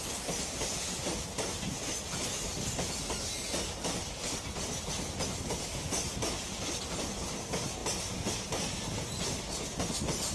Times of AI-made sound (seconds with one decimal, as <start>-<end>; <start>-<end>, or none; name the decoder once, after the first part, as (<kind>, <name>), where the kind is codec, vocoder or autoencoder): none